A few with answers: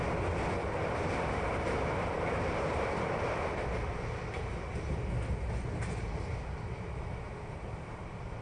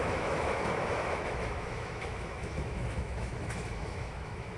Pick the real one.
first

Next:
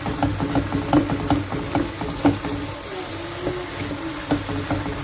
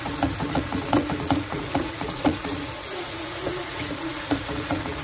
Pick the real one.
first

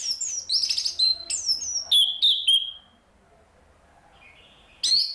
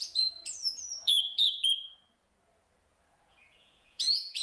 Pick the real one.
first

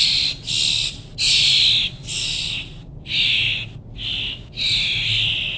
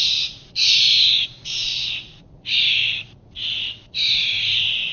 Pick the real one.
first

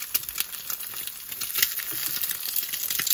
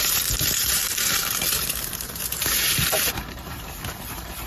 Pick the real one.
first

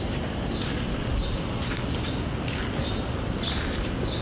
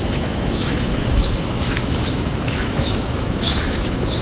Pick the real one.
first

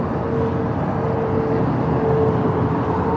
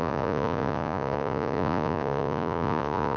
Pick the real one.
first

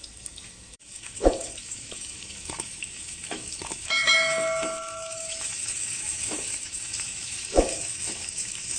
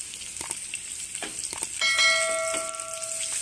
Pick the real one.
second